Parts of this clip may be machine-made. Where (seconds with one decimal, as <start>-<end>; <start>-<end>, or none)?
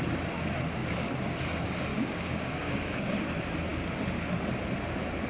1.9-3.1